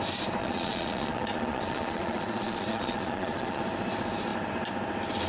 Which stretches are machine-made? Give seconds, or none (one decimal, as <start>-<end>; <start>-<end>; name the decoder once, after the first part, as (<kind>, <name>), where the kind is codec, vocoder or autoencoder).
0.4-3.6 (vocoder, Vocos)